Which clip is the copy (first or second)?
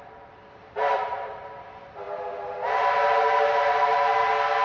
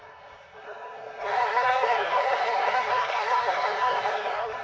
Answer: second